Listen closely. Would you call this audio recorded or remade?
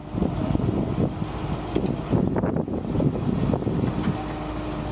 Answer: recorded